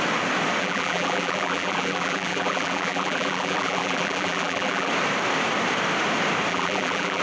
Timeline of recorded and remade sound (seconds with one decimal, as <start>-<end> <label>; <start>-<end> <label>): 0.0-0.6 recorded; 0.6-4.9 remade; 4.9-6.5 recorded; 6.5-7.2 remade